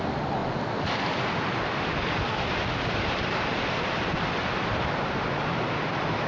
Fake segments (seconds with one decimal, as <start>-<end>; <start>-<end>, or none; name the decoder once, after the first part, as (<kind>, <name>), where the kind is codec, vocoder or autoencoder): none

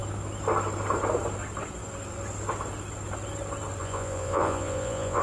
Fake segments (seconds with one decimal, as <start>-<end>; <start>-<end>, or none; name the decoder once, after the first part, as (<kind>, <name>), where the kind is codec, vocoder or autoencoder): 3.8-5.2 (vocoder, Vocos)